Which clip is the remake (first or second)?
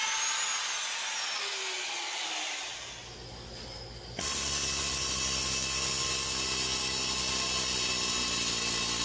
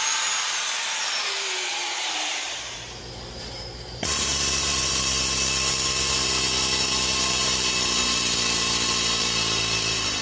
second